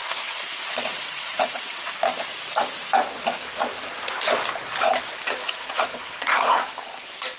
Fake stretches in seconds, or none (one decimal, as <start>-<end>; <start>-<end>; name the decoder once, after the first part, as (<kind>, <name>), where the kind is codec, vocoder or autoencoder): 0.0-1.9 (vocoder, Vocos); 5.4-6.6